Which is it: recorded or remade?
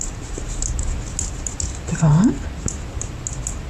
recorded